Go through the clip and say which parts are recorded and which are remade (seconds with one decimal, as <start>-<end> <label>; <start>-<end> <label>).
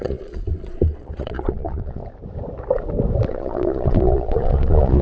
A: 0.0-2.0 remade; 2.0-3.3 recorded; 3.3-5.0 remade